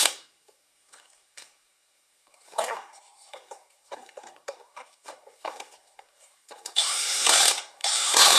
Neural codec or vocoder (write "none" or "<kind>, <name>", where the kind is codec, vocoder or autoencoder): codec, SNAC